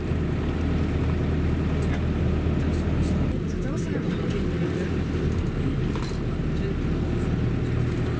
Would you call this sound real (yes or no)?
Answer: yes